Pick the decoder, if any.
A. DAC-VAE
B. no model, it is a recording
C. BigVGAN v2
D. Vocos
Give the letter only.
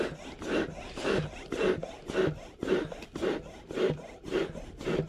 B